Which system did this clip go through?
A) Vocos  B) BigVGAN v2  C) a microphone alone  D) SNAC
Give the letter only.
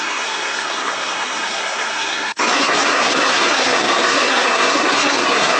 D